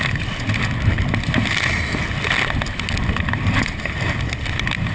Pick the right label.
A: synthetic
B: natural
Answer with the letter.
B